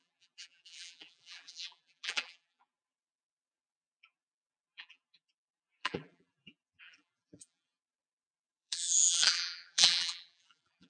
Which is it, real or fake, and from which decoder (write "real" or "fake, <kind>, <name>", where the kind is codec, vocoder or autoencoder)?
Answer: fake, vocoder, BigVGAN v2